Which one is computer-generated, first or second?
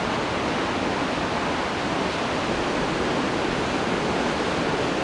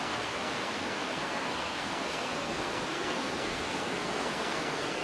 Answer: second